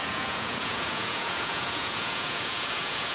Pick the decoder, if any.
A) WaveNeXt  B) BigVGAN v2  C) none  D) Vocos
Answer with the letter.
D